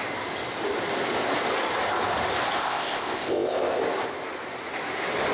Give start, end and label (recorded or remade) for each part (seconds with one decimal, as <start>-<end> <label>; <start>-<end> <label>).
0.0-2.6 recorded; 2.6-3.8 remade; 3.8-5.3 recorded